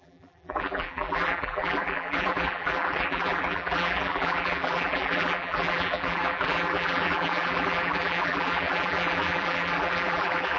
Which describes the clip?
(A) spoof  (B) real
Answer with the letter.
A